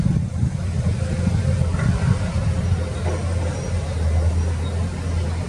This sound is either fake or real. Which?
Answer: real